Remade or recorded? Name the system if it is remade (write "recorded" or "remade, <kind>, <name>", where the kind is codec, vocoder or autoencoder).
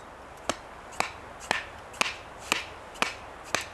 recorded